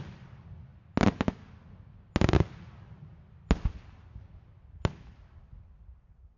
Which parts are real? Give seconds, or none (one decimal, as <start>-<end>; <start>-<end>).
0.0-6.4